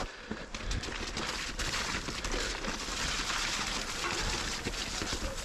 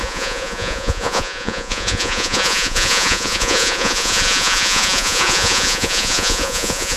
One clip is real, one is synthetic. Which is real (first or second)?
first